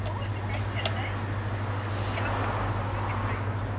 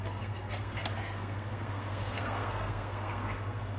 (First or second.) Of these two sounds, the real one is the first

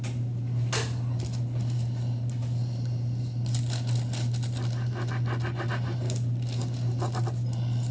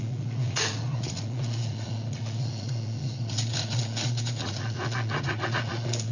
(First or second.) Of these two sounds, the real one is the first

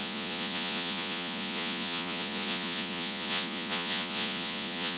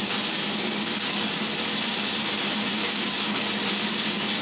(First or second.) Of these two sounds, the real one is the second